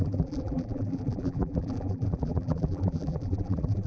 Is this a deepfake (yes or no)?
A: yes